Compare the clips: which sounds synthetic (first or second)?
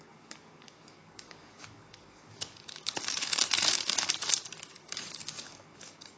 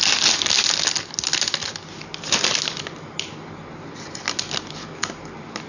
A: first